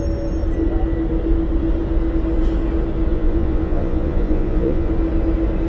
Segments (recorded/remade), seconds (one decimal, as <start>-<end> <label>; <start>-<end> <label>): 0.0-3.1 recorded; 3.1-4.9 remade; 4.9-5.7 recorded